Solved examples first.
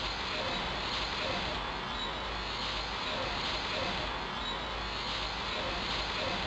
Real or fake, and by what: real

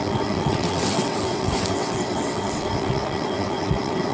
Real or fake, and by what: fake, vocoder, WaveNeXt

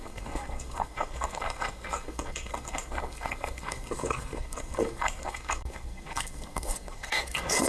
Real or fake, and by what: fake, codec, SNAC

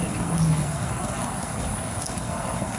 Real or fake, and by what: fake, codec, SNAC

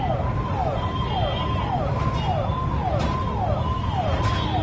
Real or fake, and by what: real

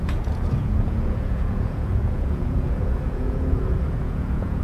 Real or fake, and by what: fake, vocoder, Vocos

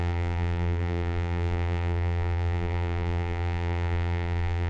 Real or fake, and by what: fake, vocoder, BigVGAN v2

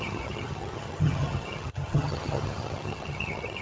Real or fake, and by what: fake, vocoder, HiFi-GAN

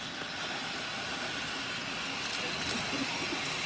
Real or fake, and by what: real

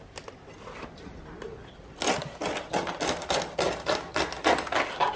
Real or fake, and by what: real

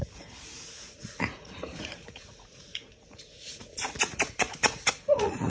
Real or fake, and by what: fake, vocoder, Vocos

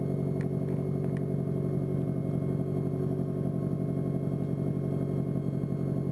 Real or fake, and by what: real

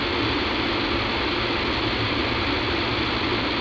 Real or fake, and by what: real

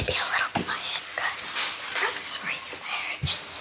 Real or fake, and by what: real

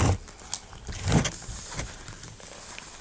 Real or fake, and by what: real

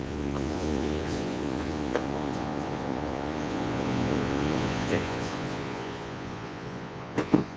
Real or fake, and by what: fake, vocoder, Vocos